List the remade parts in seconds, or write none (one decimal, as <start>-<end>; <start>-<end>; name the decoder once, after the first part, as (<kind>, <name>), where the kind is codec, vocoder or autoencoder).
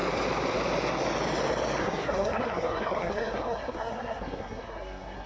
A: 1.8-5.3 (codec, SNAC)